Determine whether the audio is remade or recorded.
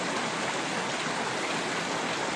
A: recorded